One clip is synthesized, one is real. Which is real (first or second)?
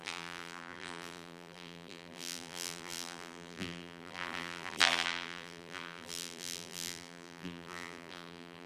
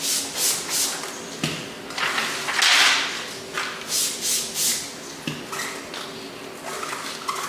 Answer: second